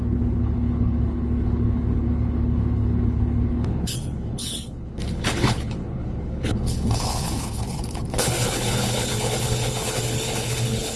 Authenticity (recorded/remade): remade